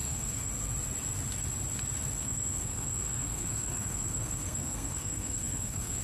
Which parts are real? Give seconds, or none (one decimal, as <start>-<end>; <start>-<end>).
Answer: 0.5-2.2